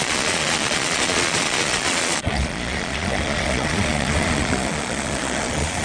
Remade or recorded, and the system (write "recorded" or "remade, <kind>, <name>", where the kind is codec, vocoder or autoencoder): remade, vocoder, Vocos